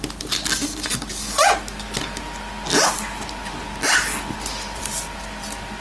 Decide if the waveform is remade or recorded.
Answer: recorded